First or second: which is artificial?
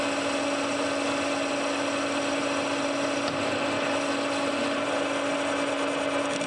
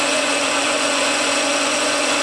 second